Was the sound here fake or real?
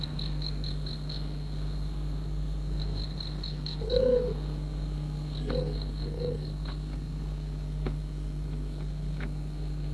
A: fake